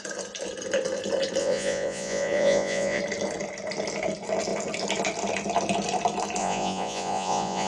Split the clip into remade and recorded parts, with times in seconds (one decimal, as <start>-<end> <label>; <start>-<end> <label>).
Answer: 0.0-1.4 recorded; 1.4-3.0 remade; 3.0-6.4 recorded; 6.4-7.7 remade